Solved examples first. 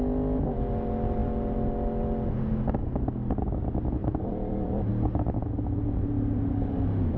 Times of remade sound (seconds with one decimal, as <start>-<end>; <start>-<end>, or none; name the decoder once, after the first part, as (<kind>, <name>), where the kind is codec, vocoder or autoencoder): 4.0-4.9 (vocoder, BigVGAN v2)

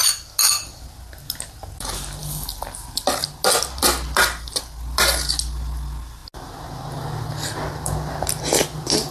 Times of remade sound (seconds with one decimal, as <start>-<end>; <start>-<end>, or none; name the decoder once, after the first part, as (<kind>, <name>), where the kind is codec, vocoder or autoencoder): none

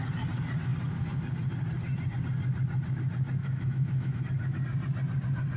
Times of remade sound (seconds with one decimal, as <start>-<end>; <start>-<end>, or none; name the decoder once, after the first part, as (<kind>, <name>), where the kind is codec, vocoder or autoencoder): 3.4-4.2 (autoencoder, DAC-VAE)